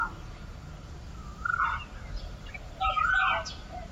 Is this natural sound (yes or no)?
yes